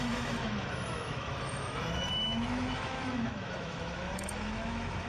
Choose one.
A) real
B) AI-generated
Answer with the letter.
B